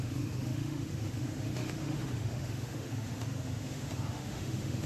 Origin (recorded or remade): remade